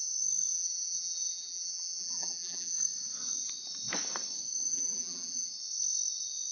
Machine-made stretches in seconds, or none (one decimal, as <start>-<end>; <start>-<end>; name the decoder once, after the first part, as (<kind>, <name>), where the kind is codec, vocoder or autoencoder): 0.5-2.8 (vocoder, BigVGAN v2); 4.7-5.5